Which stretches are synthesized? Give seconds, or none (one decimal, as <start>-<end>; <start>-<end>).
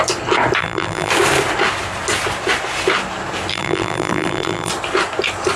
0.6-1.1; 3.5-4.7